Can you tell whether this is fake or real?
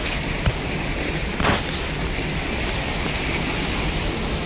real